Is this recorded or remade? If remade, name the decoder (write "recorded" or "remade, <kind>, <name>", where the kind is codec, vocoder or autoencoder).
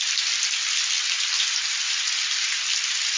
recorded